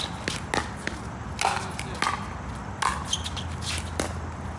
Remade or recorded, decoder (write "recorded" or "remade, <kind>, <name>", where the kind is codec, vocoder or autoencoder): recorded